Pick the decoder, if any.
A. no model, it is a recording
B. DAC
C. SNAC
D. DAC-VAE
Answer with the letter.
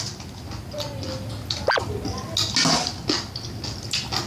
A